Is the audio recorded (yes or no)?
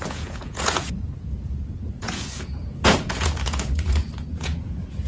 no